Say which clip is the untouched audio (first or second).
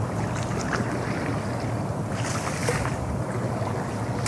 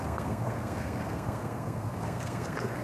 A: first